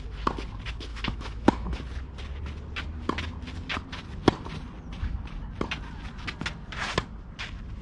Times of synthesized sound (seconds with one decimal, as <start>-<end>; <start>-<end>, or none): 0.9-1.8